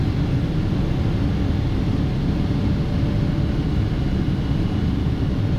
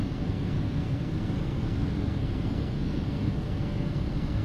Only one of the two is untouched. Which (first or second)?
first